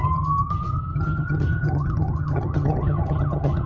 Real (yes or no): no